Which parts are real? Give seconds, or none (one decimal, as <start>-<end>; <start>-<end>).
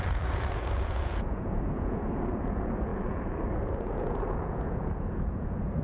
none